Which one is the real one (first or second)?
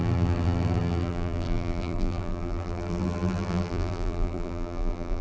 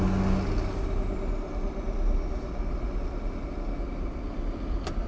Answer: second